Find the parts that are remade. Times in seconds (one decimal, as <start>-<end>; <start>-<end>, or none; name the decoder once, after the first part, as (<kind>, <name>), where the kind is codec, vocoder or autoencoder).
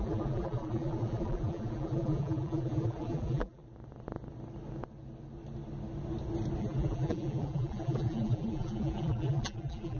0.0-3.6 (vocoder, BigVGAN v2); 6.6-10.0